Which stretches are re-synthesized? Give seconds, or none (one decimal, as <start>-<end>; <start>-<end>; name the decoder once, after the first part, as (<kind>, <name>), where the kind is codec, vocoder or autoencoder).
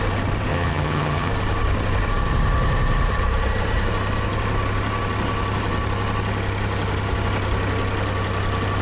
0.5-1.3 (vocoder, HiFi-GAN)